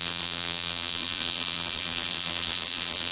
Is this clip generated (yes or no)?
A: yes